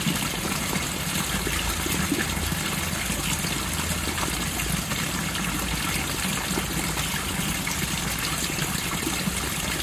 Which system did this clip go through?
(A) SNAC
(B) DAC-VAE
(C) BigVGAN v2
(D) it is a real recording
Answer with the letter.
D